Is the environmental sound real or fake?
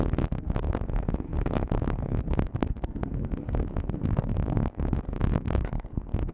fake